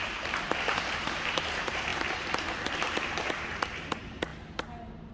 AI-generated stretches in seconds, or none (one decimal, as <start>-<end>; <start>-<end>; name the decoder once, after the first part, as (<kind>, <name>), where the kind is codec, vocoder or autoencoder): 0.0-1.9 (vocoder, BigVGAN v2); 3.8-5.1